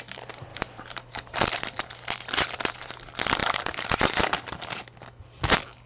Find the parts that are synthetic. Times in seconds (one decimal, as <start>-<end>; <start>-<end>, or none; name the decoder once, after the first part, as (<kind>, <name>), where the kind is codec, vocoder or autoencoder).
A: 0.5-1.4 (vocoder, BigVGAN v2); 3.4-4.1